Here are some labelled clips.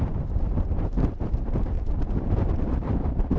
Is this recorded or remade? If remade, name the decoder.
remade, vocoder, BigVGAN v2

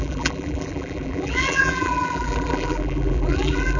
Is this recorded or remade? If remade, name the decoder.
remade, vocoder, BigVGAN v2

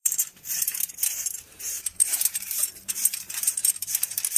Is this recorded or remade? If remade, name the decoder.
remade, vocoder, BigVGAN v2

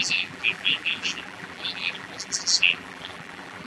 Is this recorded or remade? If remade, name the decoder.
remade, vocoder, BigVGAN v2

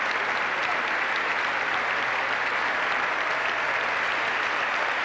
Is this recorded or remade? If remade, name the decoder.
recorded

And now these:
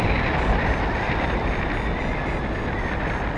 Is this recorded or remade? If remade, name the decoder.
recorded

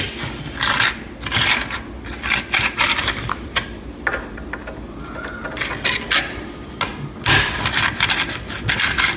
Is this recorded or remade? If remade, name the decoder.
recorded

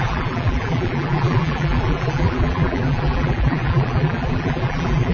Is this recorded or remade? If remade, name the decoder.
remade, vocoder, BigVGAN v2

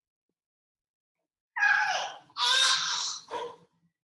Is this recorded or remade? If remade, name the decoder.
remade, vocoder, BigVGAN v2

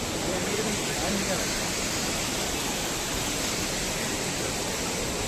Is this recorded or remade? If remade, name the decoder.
recorded